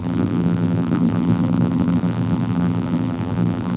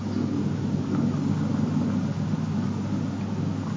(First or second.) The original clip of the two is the second